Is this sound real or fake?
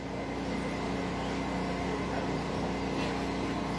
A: real